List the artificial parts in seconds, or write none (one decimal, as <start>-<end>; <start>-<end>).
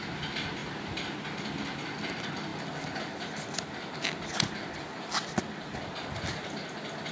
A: none